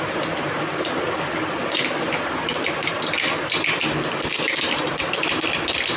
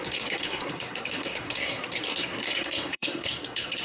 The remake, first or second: second